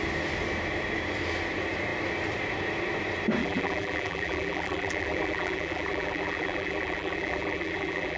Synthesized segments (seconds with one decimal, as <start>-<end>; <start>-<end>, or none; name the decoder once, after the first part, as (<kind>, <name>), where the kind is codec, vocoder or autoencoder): 3.4-8.2 (vocoder, BigVGAN v2)